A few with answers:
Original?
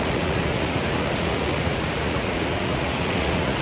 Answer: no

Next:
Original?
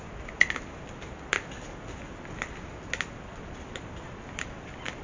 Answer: yes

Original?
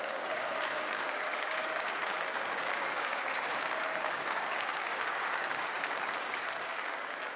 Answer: no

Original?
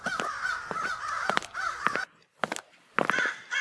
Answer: yes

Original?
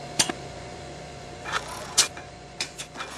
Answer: no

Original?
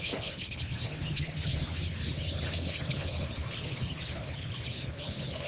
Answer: no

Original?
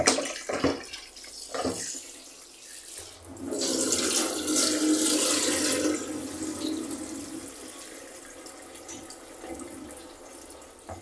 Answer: yes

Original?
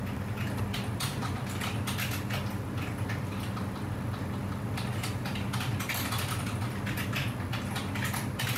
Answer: yes